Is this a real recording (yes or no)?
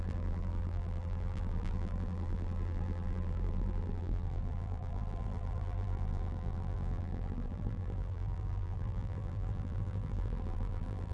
no